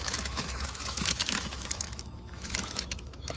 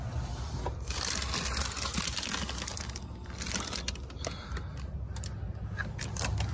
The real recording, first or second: second